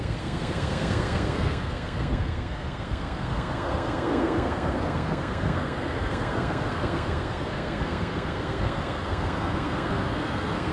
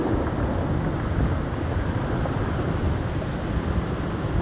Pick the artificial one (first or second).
first